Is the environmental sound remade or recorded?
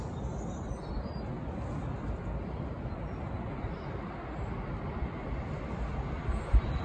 recorded